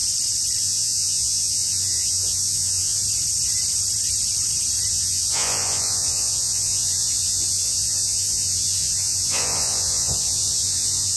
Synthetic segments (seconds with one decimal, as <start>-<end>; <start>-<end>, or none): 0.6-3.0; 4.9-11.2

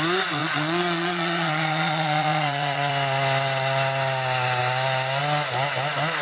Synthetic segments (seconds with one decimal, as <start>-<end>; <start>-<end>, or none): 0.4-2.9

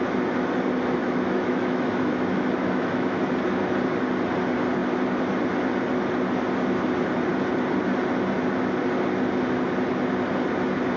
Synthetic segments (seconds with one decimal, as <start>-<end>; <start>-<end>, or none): 1.0-3.3

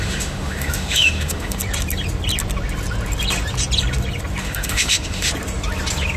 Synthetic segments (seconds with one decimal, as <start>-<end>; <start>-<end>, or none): 0.0-1.6; 4.4-5.3

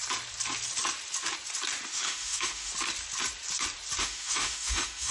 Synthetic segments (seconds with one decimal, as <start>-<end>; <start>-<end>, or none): 1.9-2.7; 4.0-5.1

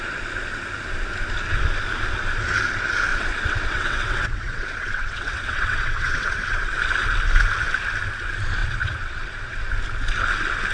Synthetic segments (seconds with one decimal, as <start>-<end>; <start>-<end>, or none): 3.1-6.7; 8.6-9.7

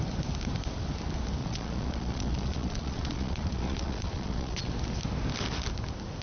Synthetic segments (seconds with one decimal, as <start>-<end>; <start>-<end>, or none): 1.4-4.7

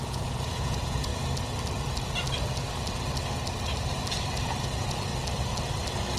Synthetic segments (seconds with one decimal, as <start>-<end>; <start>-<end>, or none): 0.0-1.1; 4.6-5.1